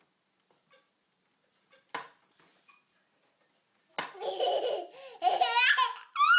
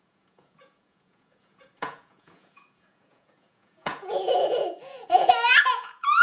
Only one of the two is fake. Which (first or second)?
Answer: second